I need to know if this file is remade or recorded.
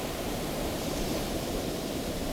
remade